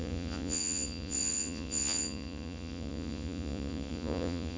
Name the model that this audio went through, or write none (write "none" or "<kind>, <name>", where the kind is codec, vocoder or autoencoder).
vocoder, Vocos